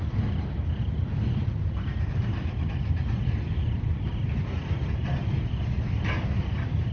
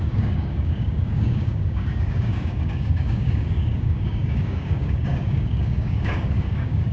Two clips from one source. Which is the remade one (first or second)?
second